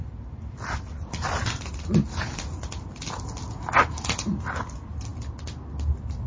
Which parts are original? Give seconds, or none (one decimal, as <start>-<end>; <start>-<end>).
2.9-3.8; 5.1-6.3